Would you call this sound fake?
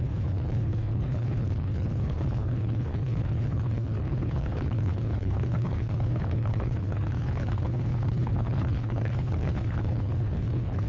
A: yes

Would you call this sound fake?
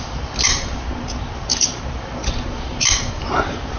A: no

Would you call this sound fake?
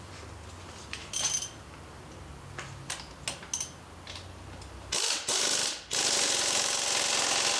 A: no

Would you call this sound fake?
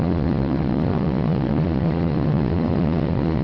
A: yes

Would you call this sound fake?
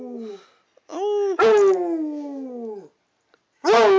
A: no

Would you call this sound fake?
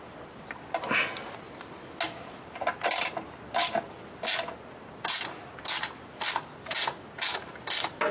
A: no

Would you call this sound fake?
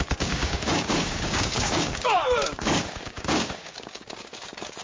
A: yes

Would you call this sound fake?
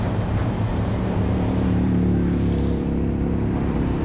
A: yes